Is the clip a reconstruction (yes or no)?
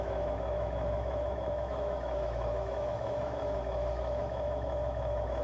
yes